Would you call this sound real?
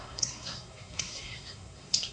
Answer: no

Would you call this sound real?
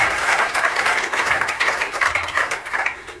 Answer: no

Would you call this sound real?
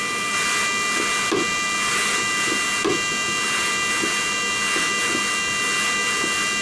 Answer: yes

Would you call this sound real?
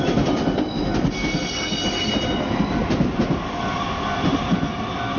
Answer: yes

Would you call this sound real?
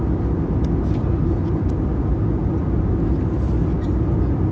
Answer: yes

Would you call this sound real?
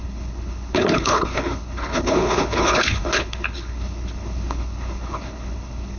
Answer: no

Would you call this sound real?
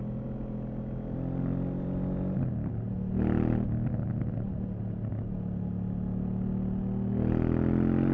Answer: yes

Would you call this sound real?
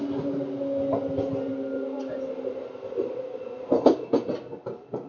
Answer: yes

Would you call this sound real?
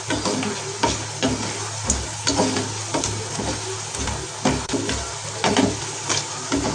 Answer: yes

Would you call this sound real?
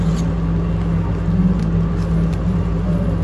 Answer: yes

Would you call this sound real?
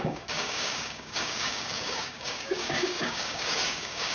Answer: no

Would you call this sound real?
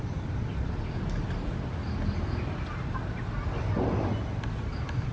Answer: yes